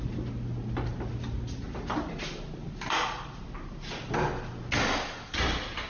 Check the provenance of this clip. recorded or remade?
recorded